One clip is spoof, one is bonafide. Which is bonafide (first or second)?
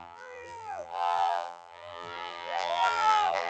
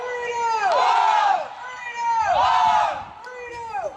second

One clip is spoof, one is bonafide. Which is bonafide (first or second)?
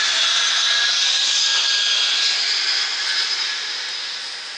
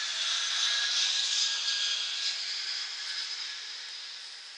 first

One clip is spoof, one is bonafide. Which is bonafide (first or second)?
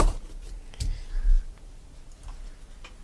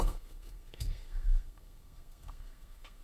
first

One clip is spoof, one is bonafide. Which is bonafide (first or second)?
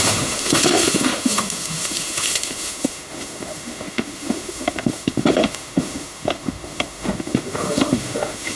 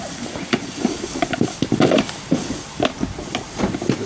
second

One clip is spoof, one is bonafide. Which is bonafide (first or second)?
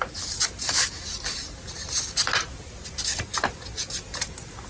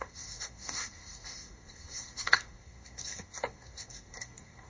first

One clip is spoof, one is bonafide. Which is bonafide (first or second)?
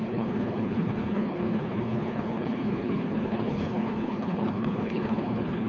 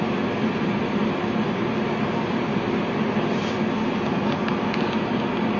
second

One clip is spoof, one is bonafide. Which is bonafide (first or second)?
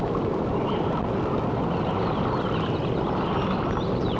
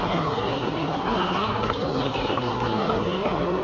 first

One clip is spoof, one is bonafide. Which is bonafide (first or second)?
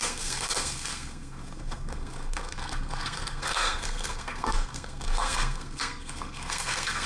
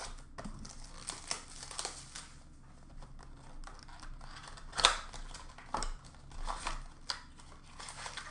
second